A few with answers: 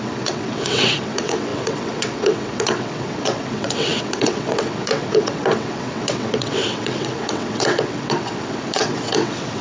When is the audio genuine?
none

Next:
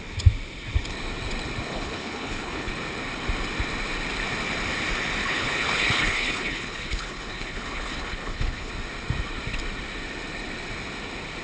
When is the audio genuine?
0.0-1.7; 2.7-5.2; 8.7-11.4

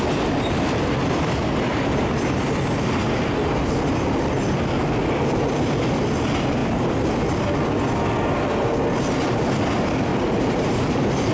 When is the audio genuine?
0.0-10.1

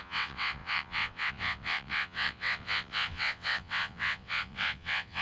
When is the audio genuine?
none

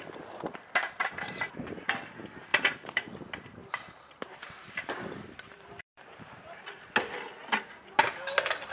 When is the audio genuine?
0.0-1.0; 1.8-2.5; 3.1-3.6; 6.4-8.7

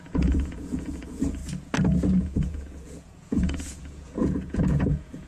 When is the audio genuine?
1.4-2.2

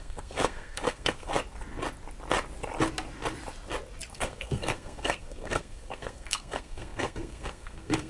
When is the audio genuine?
1.3-4.1

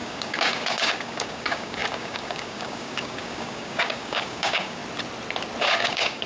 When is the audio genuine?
4.8-5.6